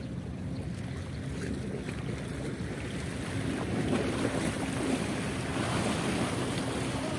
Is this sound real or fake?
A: real